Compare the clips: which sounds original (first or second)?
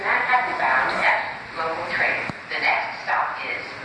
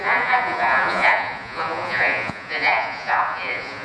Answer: first